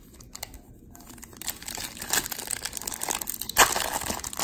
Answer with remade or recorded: recorded